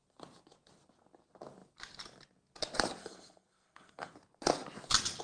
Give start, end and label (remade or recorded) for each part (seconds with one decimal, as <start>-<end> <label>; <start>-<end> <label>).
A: 0.0-3.0 recorded; 3.0-4.1 remade; 4.1-5.2 recorded